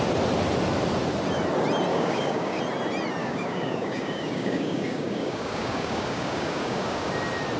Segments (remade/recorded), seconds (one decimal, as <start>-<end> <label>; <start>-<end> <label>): 0.0-1.9 recorded; 1.9-2.6 remade; 2.6-3.2 recorded; 3.2-7.1 remade; 7.1-7.6 recorded